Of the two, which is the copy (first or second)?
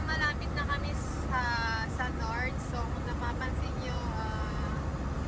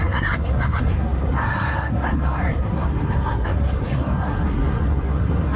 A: second